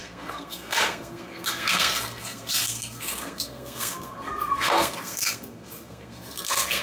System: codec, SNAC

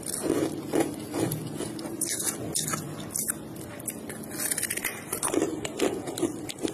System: none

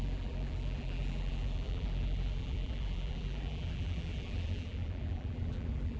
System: vocoder, BigVGAN v2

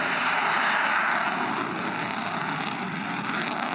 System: none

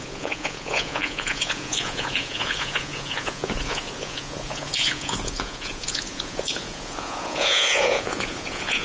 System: vocoder, Vocos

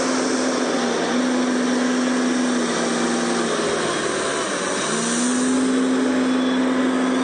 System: none